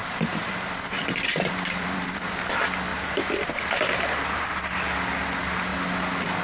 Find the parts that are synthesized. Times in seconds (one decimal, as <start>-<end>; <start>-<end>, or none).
0.0-2.5; 2.9-4.2